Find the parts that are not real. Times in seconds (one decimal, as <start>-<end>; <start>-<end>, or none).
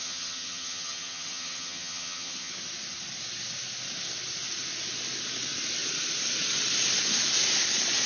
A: 0.0-2.5